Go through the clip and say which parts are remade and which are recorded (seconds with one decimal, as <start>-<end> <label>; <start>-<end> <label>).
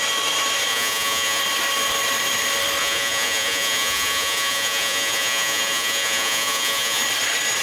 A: 0.0-0.7 recorded; 0.7-1.4 remade; 1.4-2.8 recorded; 2.8-7.0 remade; 7.0-7.6 recorded